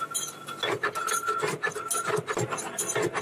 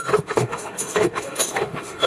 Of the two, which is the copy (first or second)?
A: second